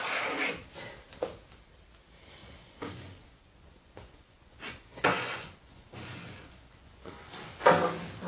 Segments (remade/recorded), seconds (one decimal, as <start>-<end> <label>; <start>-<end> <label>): 0.0-2.4 recorded; 2.4-7.4 remade; 7.4-8.3 recorded